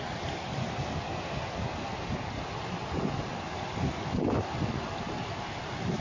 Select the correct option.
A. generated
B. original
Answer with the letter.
B